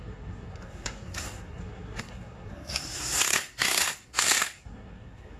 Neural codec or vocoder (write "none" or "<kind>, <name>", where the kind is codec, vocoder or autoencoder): codec, SNAC